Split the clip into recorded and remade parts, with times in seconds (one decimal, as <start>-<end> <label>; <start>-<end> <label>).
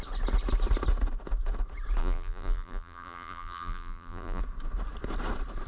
0.0-2.0 recorded; 2.0-4.4 remade; 4.4-5.7 recorded